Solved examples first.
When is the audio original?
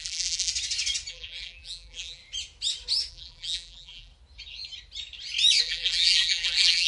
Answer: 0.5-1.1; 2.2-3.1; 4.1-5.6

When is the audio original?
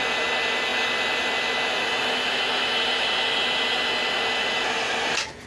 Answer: 0.0-5.5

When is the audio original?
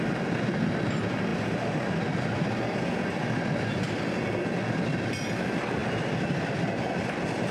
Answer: 0.0-7.5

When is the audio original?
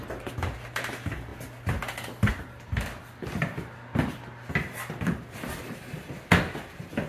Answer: 0.0-7.1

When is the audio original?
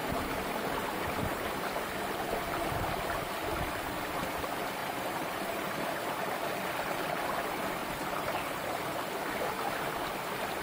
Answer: 1.5-4.8; 6.0-7.8; 9.0-10.6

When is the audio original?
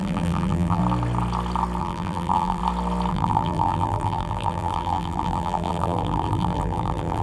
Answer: 0.8-1.8; 2.6-3.1